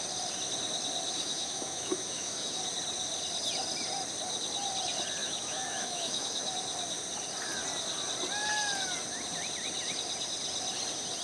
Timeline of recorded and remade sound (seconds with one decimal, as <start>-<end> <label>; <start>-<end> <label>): 0.0-1.2 recorded; 1.2-2.6 remade; 2.6-5.2 recorded; 5.2-6.5 remade; 6.5-11.2 recorded